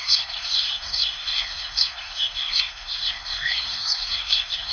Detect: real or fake fake